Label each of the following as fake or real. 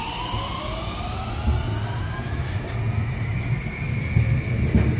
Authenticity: real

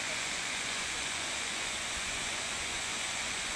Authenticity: fake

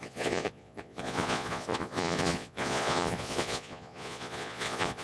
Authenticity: fake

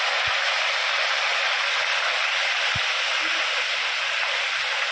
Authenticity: real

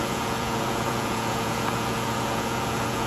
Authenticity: fake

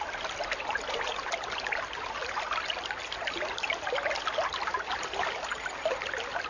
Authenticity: real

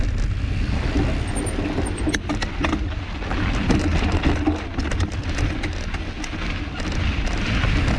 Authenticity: real